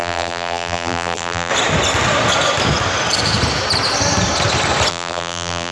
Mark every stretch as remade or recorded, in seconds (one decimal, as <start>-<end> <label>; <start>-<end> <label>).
0.0-1.5 remade; 1.5-4.9 recorded; 4.9-5.7 remade